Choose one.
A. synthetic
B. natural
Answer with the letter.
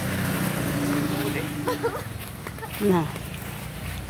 B